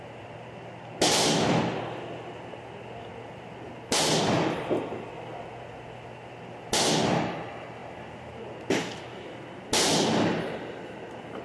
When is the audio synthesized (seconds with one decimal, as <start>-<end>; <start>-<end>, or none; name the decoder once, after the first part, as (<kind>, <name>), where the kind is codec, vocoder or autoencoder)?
none